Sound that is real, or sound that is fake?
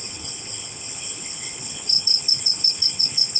fake